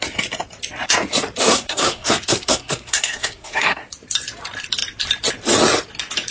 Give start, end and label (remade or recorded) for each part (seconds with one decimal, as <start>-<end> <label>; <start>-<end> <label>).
0.0-1.4 recorded; 1.4-3.8 remade; 3.8-6.3 recorded

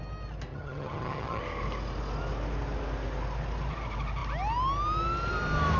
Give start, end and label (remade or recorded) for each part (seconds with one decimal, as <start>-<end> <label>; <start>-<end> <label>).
0.0-0.5 recorded; 0.5-1.4 remade; 1.4-5.8 recorded

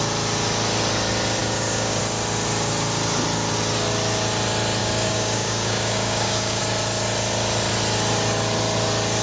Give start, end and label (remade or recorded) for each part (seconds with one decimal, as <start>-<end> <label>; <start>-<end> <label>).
0.0-1.4 recorded; 1.4-2.0 remade; 2.0-4.8 recorded; 4.8-6.6 remade; 6.6-9.2 recorded

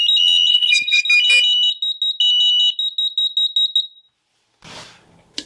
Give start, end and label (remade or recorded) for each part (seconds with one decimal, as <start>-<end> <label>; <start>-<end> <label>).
0.0-0.5 recorded; 0.5-1.0 remade; 1.0-5.5 recorded

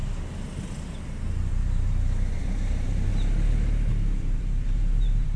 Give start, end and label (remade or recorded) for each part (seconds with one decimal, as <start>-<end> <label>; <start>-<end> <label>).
0.0-1.5 recorded; 1.5-3.1 remade; 3.1-3.9 recorded; 3.9-5.4 remade

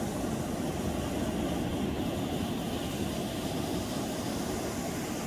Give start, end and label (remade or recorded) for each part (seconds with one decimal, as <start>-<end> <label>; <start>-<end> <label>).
0.0-5.3 recorded

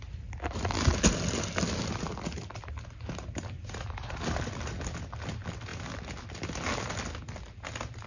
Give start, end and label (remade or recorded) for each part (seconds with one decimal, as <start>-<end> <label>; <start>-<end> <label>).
0.0-8.1 recorded

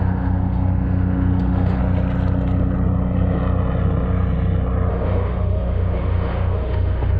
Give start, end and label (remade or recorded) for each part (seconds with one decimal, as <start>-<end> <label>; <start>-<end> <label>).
0.0-1.8 remade; 1.8-4.9 recorded; 4.9-7.2 remade